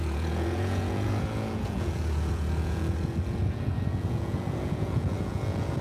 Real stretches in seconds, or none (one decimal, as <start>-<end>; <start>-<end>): none